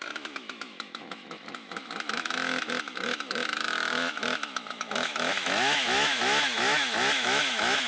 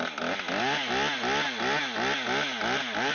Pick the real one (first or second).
second